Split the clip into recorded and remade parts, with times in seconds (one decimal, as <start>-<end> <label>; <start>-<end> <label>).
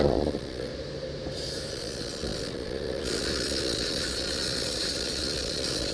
0.0-0.7 remade; 0.7-1.7 recorded; 1.7-5.9 remade